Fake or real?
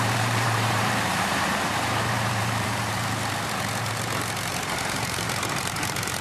fake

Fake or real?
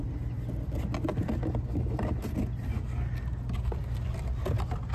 real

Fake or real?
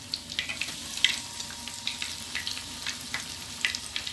real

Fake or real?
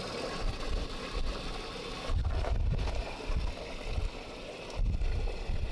real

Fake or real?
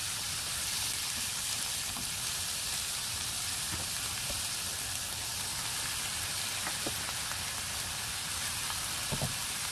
real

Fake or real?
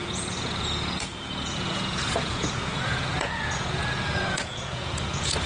fake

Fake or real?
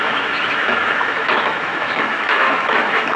fake